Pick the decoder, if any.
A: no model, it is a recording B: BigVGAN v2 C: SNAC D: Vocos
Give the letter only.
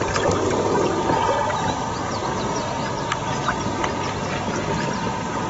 A